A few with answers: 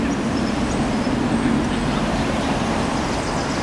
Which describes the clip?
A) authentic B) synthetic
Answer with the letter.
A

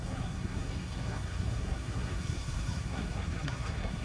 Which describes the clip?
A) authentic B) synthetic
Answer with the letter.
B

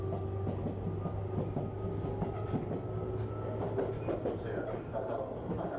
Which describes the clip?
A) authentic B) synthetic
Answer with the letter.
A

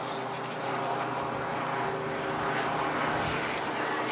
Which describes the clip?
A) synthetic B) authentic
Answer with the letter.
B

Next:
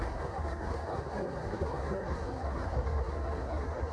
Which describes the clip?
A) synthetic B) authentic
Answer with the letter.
A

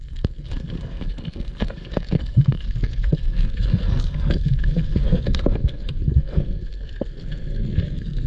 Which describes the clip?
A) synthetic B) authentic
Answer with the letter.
A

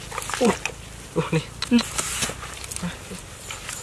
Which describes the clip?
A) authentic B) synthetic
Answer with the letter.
A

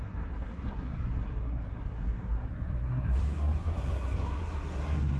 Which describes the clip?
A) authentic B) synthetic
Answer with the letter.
B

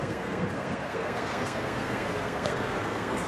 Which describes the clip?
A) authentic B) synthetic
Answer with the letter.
B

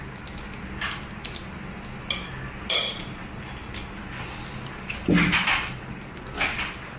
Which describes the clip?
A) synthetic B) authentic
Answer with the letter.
B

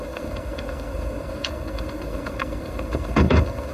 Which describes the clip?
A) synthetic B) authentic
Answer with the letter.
A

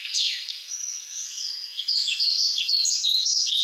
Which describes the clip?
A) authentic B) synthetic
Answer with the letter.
B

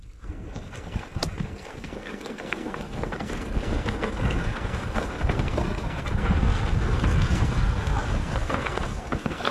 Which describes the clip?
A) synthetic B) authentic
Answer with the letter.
A